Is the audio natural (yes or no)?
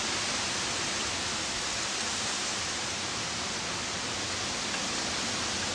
yes